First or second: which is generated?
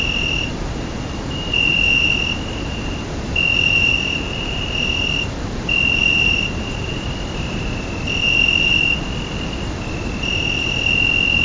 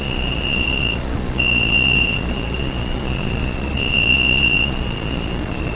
second